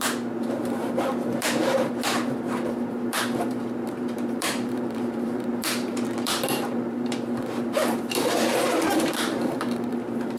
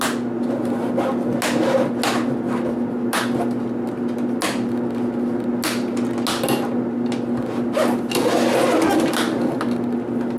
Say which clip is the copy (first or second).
first